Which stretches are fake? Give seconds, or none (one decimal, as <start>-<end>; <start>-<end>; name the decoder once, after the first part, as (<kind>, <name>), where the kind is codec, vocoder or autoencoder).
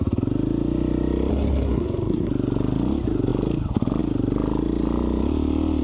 1.3-2.3 (codec, SNAC)